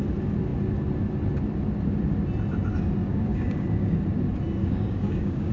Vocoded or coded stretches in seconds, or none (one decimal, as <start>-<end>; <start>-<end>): 3.0-4.0; 4.6-5.5